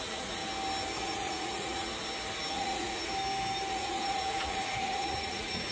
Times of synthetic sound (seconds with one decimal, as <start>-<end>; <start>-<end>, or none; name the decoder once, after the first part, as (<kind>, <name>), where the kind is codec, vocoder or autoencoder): 0.0-0.4 (vocoder, Vocos); 1.0-1.9; 2.5-3.1; 3.7-5.7